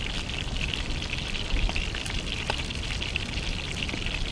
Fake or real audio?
real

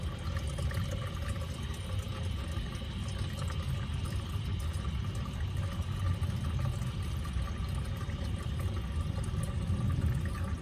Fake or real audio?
real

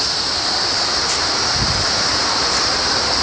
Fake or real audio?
fake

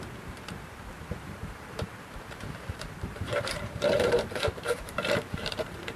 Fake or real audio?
fake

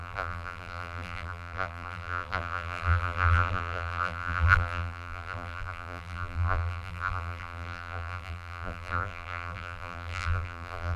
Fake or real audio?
fake